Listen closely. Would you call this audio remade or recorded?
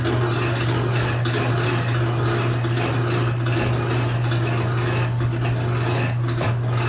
recorded